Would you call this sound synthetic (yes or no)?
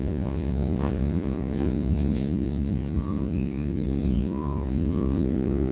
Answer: yes